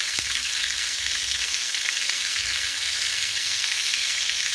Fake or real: fake